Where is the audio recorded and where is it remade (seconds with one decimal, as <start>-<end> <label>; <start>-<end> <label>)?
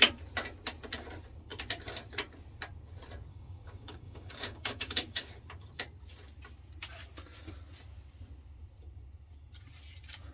0.0-3.3 recorded; 3.3-5.3 remade; 5.3-10.3 recorded